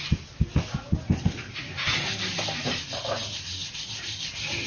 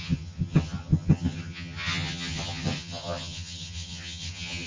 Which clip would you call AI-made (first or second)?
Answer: second